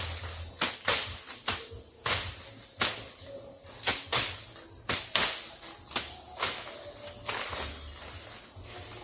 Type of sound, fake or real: real